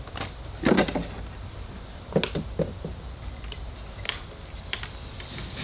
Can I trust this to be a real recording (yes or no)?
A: yes